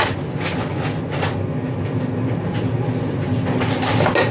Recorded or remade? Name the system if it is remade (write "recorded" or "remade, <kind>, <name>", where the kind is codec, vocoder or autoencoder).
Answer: recorded